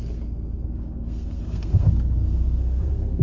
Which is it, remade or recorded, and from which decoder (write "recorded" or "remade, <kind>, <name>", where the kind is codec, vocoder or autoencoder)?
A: remade, codec, SNAC